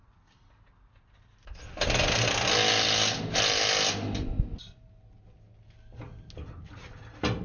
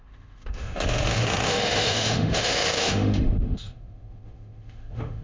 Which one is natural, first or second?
first